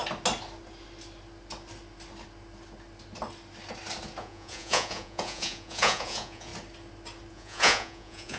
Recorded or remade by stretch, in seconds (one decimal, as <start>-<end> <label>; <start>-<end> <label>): 0.0-4.2 recorded; 4.2-6.5 remade; 6.5-7.3 recorded; 7.3-8.4 remade